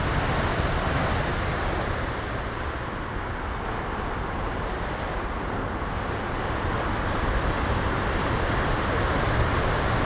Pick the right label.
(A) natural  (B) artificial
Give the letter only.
A